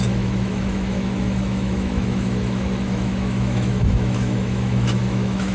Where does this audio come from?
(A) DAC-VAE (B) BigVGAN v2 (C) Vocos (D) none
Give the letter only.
A